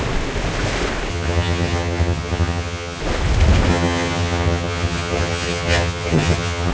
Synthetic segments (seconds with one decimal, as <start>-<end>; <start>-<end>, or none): 1.1-3.0; 3.7-6.7